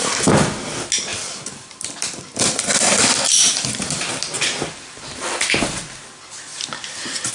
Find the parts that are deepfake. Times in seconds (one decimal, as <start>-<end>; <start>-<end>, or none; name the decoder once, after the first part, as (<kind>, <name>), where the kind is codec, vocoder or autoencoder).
1.1-5.5 (vocoder, BigVGAN v2); 6.5-7.3